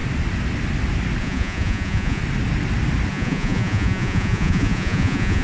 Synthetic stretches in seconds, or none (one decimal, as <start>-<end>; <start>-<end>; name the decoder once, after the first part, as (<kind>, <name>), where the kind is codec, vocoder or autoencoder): 1.2-2.2 (vocoder, Vocos); 3.1-5.4